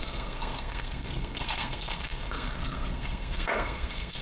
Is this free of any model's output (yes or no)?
no